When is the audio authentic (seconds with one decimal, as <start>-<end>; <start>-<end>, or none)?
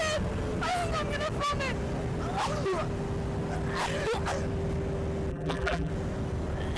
0.0-5.3; 5.9-6.8